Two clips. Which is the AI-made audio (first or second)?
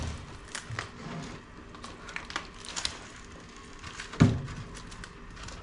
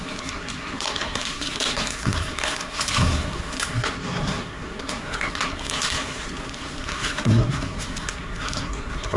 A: second